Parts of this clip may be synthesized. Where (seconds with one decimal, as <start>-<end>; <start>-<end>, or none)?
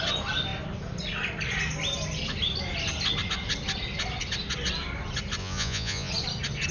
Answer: 5.4-6.1